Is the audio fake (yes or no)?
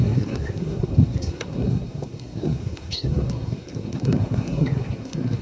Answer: yes